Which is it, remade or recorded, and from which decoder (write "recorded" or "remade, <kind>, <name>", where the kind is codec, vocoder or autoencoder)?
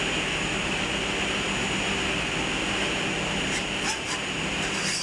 recorded